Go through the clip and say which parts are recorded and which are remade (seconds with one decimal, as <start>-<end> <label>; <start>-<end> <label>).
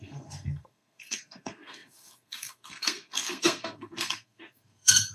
0.0-5.1 remade